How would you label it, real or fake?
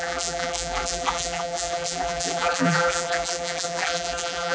fake